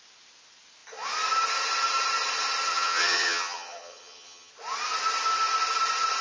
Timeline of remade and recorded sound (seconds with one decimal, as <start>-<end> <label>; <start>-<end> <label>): 0.0-2.7 recorded; 2.7-4.5 remade; 4.5-6.2 recorded